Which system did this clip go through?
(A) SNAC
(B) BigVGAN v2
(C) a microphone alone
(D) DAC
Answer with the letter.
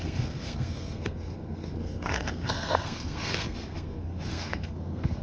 A